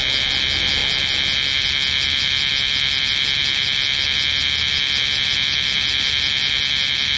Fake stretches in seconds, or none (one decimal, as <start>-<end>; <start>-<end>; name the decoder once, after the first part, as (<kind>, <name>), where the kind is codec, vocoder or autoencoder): none